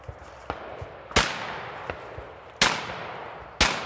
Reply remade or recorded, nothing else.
recorded